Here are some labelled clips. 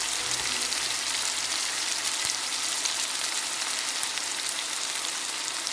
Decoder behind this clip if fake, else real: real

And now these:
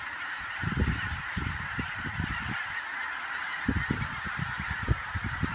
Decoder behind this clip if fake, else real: real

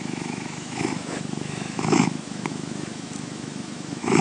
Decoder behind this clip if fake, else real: fake, autoencoder, DAC-VAE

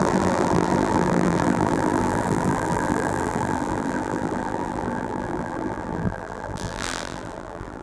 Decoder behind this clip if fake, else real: fake, vocoder, BigVGAN v2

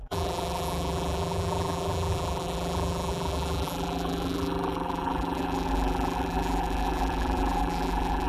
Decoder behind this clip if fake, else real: fake, vocoder, BigVGAN v2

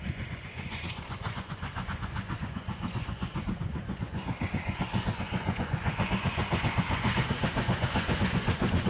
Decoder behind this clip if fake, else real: fake, vocoder, Vocos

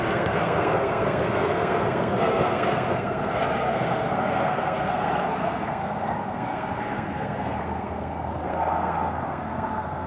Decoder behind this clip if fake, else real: fake, codec, SNAC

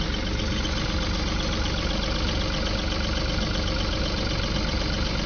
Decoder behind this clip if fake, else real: real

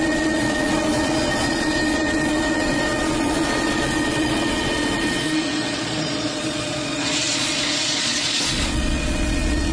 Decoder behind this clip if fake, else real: fake, vocoder, Vocos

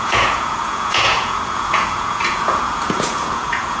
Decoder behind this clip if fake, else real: fake, vocoder, Vocos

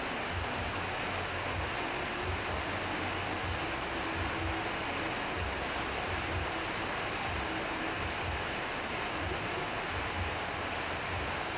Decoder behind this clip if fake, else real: real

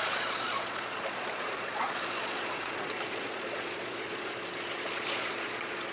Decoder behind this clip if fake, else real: fake, vocoder, Vocos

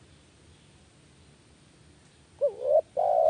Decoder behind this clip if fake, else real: real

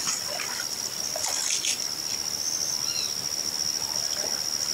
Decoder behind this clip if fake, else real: real